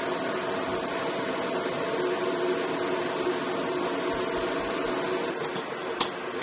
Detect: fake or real real